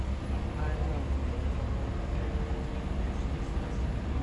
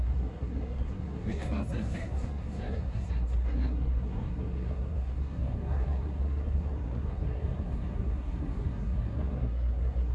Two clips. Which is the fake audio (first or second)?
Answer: second